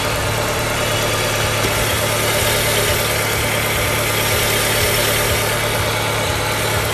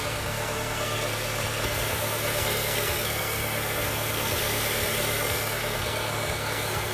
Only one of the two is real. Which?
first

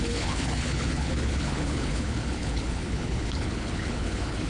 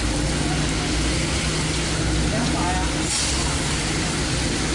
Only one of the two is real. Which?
second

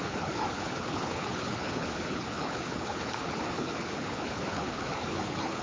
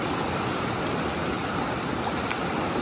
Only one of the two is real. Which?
second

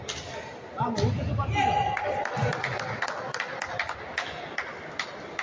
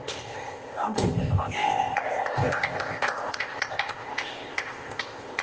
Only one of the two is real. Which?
first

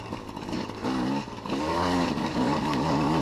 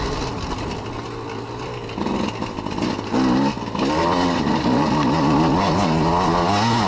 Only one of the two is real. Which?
second